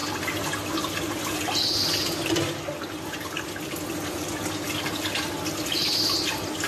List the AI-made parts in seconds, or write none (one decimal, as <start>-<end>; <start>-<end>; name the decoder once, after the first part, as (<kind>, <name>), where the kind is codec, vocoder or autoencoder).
none